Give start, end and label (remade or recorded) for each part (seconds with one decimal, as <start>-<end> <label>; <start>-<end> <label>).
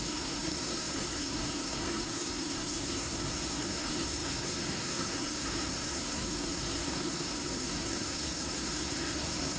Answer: 0.0-9.6 remade